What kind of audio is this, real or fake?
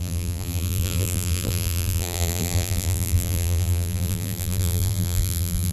fake